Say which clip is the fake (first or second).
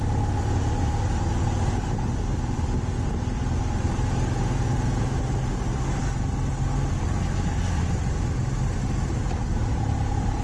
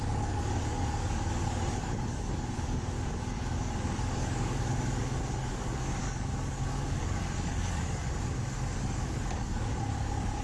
second